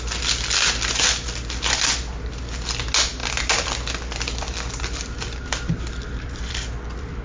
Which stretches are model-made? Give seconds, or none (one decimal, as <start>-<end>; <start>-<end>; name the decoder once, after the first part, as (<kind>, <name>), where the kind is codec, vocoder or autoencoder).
3.2-7.2 (vocoder, BigVGAN v2)